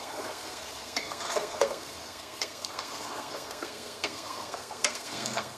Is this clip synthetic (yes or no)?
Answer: yes